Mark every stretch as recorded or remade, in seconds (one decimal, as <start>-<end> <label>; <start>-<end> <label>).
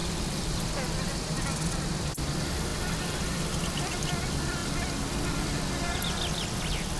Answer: 0.0-0.5 remade; 0.5-7.0 recorded